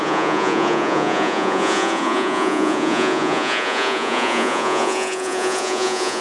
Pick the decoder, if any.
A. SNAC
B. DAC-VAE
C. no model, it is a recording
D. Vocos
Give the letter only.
D